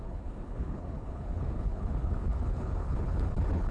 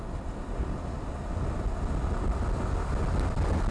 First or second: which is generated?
first